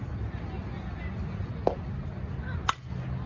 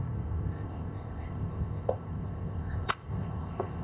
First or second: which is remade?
second